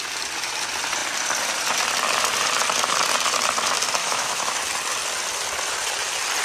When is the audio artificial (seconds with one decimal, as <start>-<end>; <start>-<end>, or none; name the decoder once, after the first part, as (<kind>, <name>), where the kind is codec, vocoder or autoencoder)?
4.0-4.6 (autoencoder, DAC-VAE)